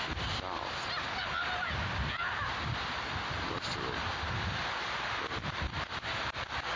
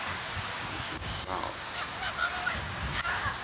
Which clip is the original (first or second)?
first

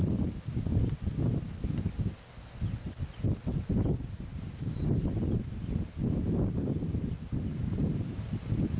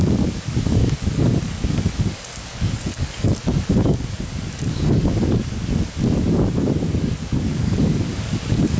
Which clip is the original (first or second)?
first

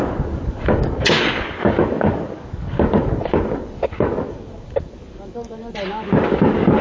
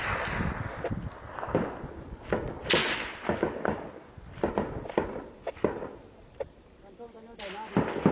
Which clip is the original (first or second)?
second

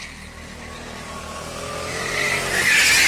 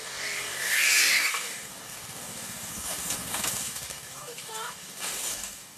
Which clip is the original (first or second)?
first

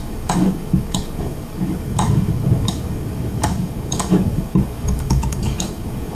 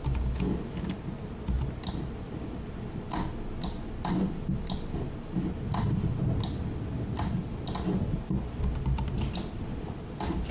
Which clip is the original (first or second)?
second